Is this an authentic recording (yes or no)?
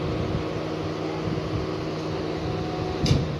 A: yes